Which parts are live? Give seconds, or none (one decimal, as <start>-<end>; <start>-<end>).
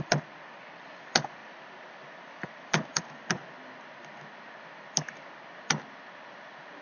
0.0-1.4; 3.0-6.8